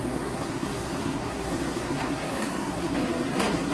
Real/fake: fake